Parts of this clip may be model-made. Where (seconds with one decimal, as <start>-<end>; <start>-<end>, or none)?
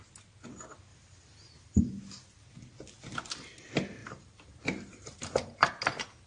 0.9-1.8; 4.0-5.7